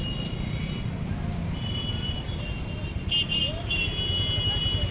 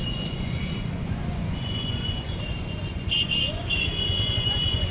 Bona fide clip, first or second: first